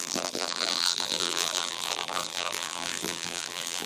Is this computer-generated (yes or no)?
yes